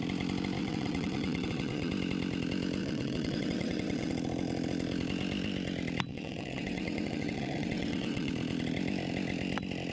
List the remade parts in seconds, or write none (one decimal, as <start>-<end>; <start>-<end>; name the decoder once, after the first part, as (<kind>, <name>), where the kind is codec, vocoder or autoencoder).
0.6-1.9 (vocoder, WaveNeXt); 2.8-4.1; 6.1-8.3

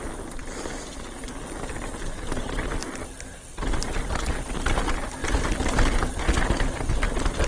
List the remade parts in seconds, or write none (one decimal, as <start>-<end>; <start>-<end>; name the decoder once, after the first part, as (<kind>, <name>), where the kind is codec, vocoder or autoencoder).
none

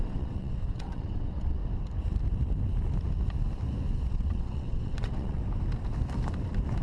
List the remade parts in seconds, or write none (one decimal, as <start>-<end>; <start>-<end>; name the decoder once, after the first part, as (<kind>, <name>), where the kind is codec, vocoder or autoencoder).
0.0-1.6 (vocoder, WaveNeXt); 4.1-5.4